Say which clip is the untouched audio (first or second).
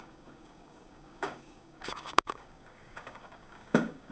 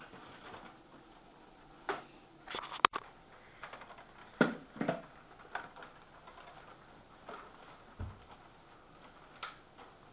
second